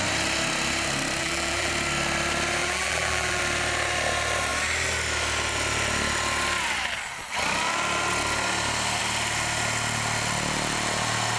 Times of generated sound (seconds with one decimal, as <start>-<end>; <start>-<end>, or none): 1.2-1.7; 2.6-3.4